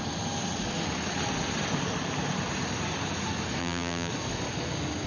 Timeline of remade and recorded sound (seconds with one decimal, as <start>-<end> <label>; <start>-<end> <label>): 0.0-3.6 recorded; 3.6-4.1 remade; 4.1-5.1 recorded